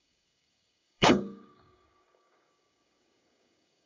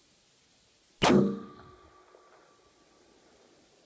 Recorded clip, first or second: second